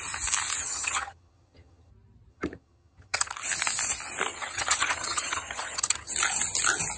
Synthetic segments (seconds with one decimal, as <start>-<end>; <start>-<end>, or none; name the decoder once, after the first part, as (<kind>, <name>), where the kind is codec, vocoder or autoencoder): 0.6-1.9 (vocoder, HiFi-GAN); 2.3-3.3; 4.3-6.1